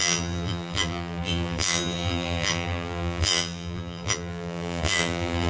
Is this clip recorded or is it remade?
remade